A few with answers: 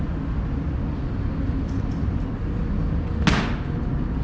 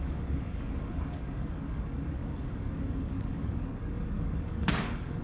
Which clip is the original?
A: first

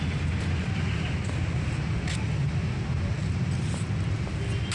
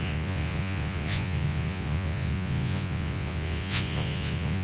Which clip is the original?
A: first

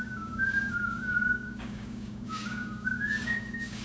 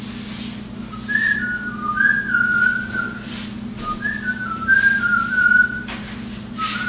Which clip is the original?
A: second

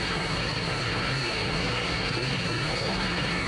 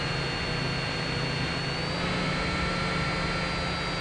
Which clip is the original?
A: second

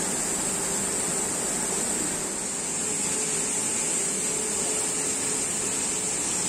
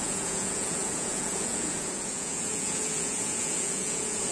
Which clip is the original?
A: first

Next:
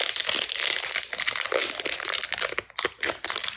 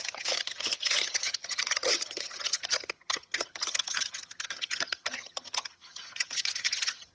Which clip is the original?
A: first